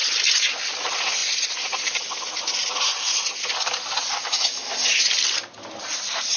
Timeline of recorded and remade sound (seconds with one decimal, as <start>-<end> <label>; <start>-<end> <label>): 0.0-6.4 recorded